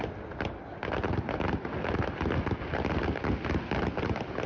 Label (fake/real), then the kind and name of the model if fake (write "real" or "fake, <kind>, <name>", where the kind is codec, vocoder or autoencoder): real